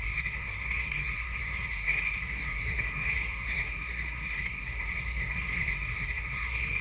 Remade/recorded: remade